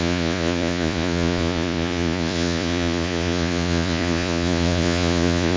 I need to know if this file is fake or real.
fake